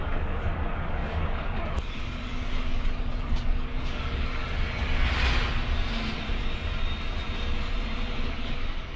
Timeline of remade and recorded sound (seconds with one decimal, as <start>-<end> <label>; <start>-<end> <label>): 0.0-4.4 remade; 4.4-8.3 recorded; 8.3-9.0 remade

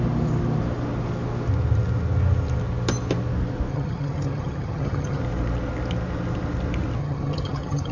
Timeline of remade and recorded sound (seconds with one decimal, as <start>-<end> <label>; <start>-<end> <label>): 0.0-3.7 recorded; 3.7-5.2 remade; 5.2-7.0 recorded; 7.0-7.9 remade

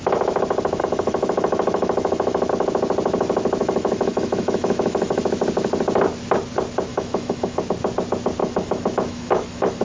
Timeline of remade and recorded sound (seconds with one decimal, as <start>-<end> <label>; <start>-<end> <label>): 0.0-0.8 recorded; 0.8-2.5 remade; 2.5-3.6 recorded; 3.6-5.2 remade; 5.2-6.9 recorded; 6.9-7.6 remade; 7.6-8.4 recorded; 8.4-9.8 remade

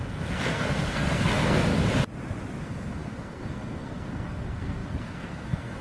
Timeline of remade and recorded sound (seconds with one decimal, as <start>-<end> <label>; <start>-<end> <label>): 0.0-1.7 remade; 1.7-2.6 recorded; 2.6-5.8 remade

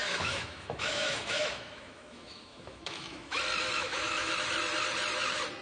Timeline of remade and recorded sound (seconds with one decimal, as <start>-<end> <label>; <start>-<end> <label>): 0.0-3.4 remade; 3.4-3.8 recorded; 3.8-4.3 remade; 4.3-5.6 recorded